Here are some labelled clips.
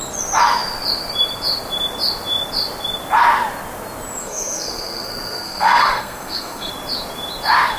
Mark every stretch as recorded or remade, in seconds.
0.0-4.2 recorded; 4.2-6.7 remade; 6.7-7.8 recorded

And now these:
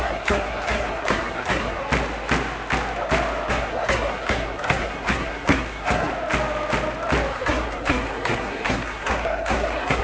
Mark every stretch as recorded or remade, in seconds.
0.0-1.8 remade; 1.8-3.5 recorded; 3.5-6.1 remade; 6.1-7.3 recorded; 7.3-10.0 remade

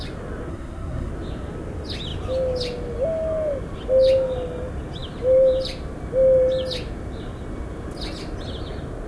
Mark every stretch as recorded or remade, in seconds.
0.0-0.5 recorded; 0.5-1.1 remade; 1.1-9.1 recorded